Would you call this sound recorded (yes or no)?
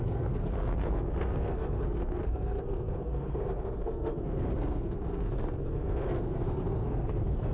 no